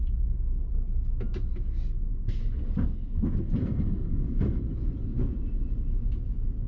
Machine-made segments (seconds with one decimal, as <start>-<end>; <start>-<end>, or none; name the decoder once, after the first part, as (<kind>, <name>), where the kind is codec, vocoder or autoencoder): 3.6-4.6 (codec, SNAC)